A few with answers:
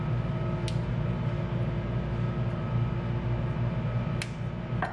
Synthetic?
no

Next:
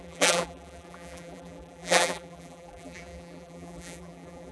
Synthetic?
yes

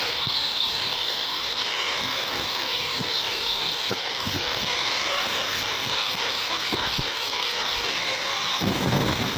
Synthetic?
yes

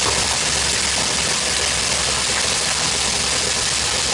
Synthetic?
no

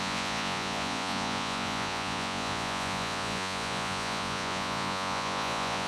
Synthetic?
yes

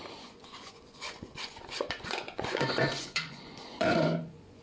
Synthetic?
yes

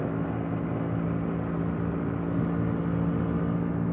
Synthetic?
no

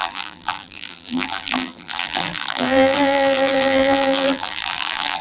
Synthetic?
yes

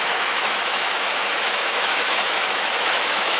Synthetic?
yes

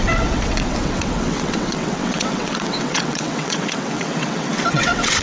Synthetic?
yes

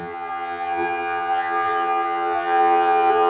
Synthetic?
yes